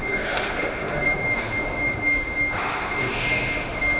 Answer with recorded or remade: remade